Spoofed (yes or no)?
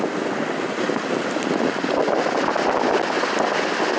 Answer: no